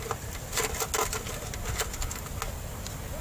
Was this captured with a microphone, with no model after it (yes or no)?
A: yes